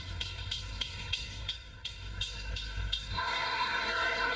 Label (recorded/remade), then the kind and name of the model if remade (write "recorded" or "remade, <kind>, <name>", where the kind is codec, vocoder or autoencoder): remade, codec, SNAC